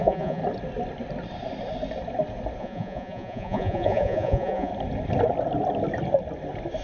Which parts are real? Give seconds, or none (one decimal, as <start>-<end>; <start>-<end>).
0.4-2.6; 4.7-6.8